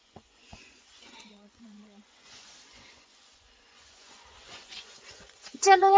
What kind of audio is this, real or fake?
fake